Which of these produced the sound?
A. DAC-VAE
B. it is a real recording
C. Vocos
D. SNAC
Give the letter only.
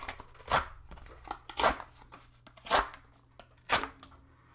B